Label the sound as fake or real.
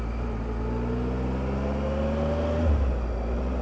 real